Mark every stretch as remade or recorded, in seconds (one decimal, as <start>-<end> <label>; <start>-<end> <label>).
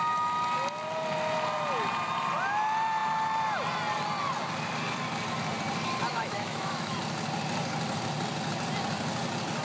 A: 0.0-6.1 recorded; 6.1-7.0 remade; 7.0-9.6 recorded